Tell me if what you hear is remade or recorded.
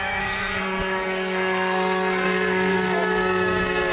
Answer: remade